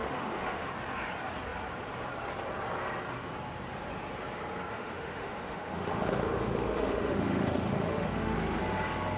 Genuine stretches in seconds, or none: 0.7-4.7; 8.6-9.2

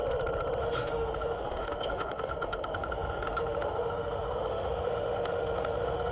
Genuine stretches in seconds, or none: 0.0-0.6

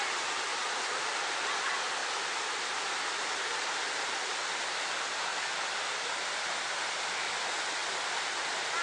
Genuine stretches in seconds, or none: 0.0-8.8